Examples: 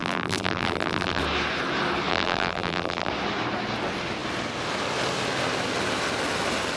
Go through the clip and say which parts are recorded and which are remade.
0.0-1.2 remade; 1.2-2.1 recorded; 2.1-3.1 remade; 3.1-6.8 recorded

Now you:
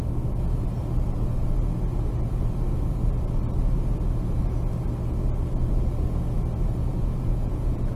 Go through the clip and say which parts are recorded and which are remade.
0.0-6.9 recorded; 6.9-8.0 remade

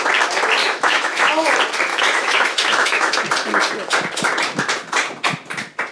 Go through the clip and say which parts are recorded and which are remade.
0.0-0.6 recorded; 0.6-1.3 remade; 1.3-1.9 recorded; 1.9-3.2 remade; 3.2-5.9 recorded

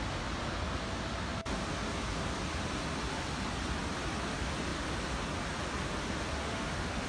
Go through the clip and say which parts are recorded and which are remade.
0.0-6.4 recorded; 6.4-7.1 remade

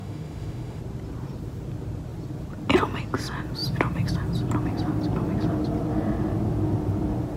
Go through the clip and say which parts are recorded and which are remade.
0.0-0.8 remade; 0.8-7.4 recorded

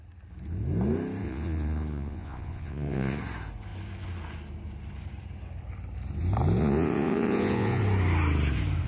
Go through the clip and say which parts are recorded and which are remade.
0.0-1.2 recorded; 1.2-3.2 remade; 3.2-6.6 recorded; 6.6-7.8 remade; 7.8-8.9 recorded

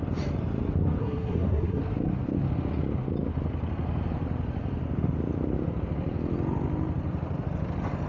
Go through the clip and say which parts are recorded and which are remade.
0.0-1.0 recorded; 1.0-1.8 remade; 1.8-8.1 recorded

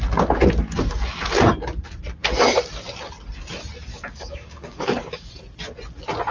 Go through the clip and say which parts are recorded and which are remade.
0.0-3.9 recorded; 3.9-5.3 remade; 5.3-6.3 recorded